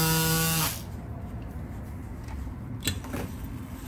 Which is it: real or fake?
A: real